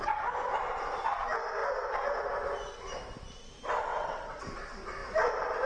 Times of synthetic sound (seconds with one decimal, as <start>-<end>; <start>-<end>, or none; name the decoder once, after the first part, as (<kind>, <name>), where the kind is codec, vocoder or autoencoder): 3.8-4.4 (vocoder, WaveNeXt)